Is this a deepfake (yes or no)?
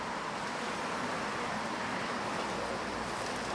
no